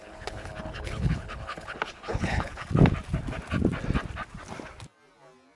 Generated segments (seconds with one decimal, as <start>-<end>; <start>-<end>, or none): 0.0-2.7